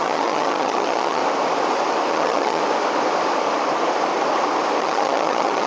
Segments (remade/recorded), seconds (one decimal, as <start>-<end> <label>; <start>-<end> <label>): 0.0-1.2 remade; 1.2-2.1 recorded; 2.1-2.6 remade; 2.6-4.8 recorded; 4.8-5.7 remade